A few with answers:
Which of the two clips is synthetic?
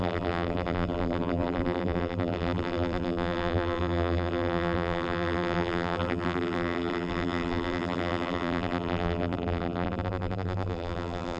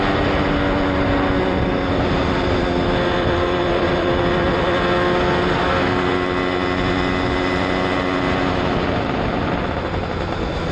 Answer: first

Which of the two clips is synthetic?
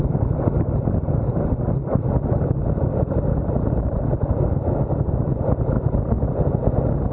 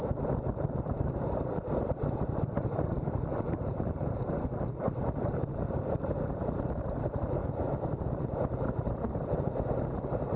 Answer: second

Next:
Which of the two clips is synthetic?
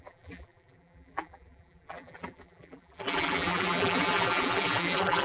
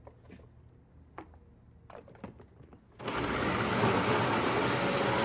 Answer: first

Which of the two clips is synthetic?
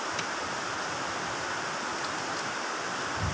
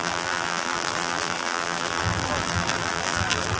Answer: second